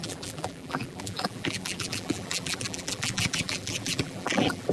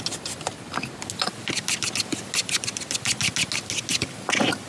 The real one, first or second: second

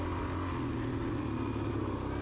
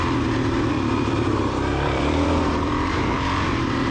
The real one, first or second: first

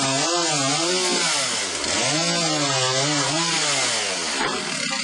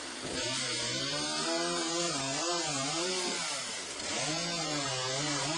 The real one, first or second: first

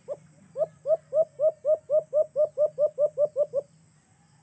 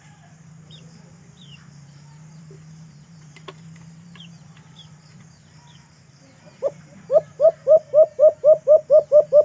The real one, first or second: first